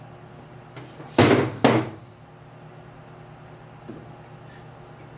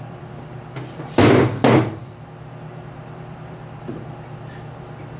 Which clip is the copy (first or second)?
second